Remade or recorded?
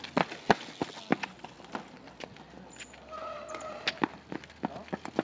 recorded